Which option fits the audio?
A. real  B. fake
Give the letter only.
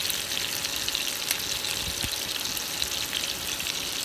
A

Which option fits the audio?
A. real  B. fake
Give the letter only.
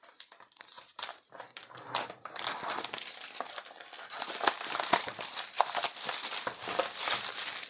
A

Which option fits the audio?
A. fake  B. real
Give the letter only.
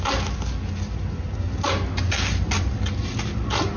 B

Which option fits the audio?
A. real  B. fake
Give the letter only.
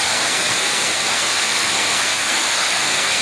B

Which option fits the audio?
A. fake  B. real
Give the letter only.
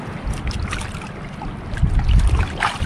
B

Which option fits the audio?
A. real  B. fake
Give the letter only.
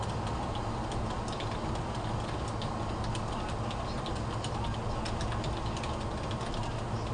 A